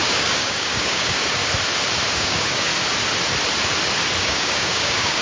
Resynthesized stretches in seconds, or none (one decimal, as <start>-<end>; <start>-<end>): 0.0-1.4; 2.1-2.7; 4.2-5.2